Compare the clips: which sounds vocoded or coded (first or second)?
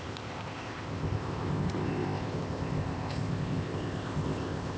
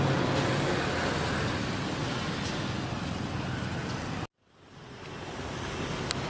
first